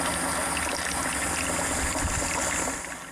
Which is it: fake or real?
real